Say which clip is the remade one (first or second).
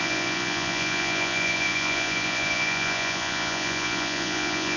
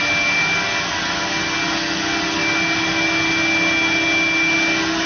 first